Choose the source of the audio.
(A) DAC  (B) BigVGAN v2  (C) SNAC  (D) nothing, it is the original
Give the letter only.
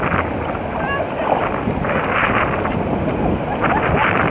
D